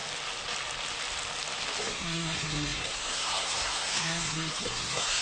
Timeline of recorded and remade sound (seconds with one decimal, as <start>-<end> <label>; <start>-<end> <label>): 0.0-1.8 recorded; 1.8-5.2 remade